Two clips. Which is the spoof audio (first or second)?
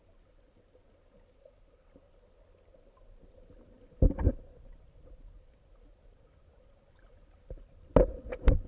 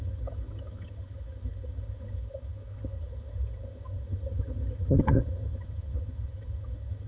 second